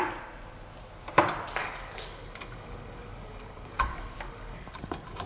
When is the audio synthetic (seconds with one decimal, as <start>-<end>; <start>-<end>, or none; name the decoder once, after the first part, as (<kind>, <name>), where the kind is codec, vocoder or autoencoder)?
1.6-4.8 (codec, DAC)